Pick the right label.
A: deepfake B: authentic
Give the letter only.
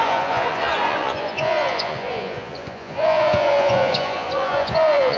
A